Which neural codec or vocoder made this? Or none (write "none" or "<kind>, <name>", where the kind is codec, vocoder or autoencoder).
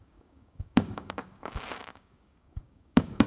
codec, DAC